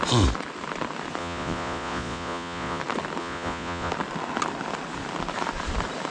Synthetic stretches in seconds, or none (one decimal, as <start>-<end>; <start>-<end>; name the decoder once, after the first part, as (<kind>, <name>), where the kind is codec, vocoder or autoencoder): 1.2-2.8 (vocoder, Vocos); 3.2-3.9